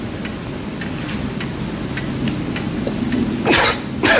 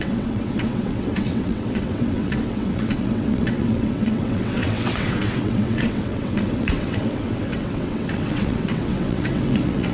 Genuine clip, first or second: first